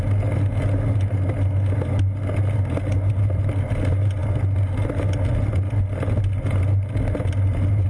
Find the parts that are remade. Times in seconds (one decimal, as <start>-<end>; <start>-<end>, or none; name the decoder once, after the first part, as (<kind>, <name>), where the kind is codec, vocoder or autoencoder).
none